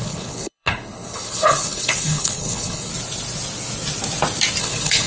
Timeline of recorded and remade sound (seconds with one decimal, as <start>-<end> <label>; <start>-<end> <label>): 0.0-2.9 remade; 2.9-4.6 recorded; 4.6-5.1 remade